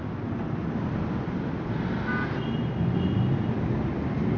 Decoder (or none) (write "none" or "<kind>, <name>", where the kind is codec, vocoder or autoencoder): none